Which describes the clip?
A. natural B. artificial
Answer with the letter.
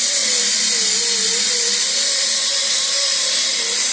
B